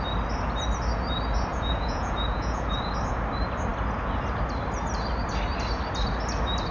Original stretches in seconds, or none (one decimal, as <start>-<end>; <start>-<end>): 0.0-1.5; 2.9-6.7